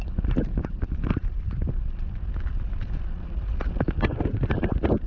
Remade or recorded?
recorded